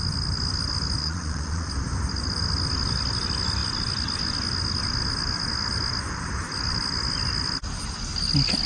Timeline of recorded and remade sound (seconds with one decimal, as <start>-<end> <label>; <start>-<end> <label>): 0.0-1.0 recorded; 1.0-1.7 remade; 1.7-8.7 recorded